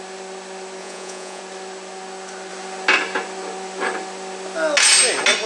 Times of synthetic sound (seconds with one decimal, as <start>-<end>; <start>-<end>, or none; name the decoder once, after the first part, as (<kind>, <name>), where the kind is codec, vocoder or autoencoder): 0.8-1.4 (vocoder, Vocos)